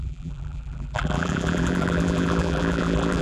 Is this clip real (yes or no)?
no